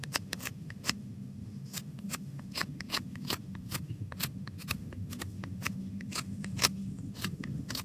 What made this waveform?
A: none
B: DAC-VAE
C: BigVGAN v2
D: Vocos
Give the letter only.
B